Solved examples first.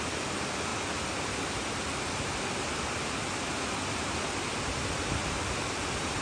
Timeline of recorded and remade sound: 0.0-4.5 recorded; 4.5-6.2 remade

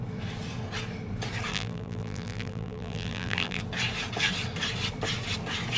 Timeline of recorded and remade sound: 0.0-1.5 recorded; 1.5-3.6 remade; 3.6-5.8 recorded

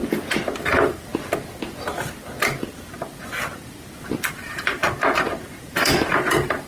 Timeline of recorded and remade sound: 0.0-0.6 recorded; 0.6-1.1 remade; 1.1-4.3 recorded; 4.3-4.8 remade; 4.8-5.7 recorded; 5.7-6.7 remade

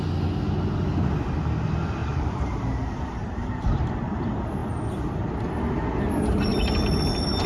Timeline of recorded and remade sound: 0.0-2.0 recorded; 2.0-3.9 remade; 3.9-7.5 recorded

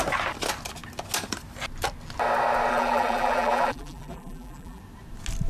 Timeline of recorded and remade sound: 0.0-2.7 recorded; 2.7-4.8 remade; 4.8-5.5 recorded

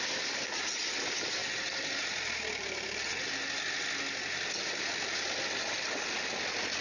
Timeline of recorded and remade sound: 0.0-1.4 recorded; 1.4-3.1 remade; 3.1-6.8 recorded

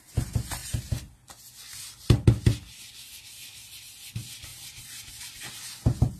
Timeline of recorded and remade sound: 0.0-6.2 recorded

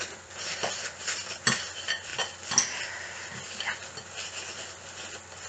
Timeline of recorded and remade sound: 0.0-2.1 remade; 2.1-5.5 recorded